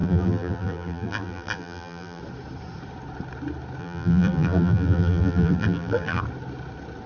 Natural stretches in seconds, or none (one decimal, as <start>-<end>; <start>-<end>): 2.2-3.8; 6.2-7.1